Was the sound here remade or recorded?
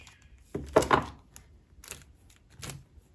recorded